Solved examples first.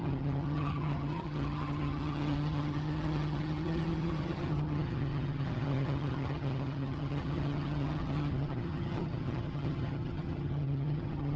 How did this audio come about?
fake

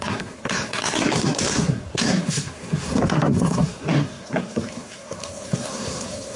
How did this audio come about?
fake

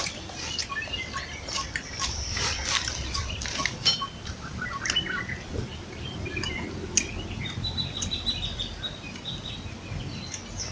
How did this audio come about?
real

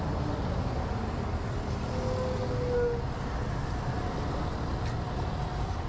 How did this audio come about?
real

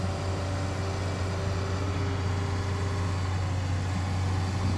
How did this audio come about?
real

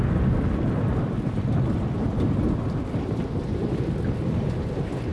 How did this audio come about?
real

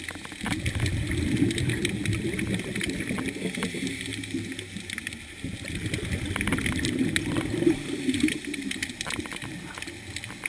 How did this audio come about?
real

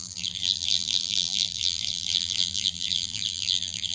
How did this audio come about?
fake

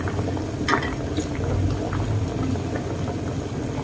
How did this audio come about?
real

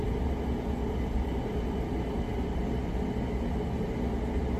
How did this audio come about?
real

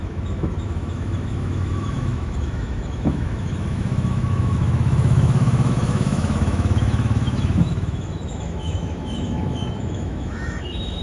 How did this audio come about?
fake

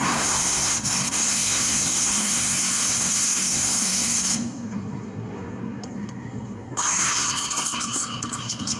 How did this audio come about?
fake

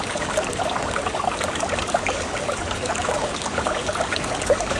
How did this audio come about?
fake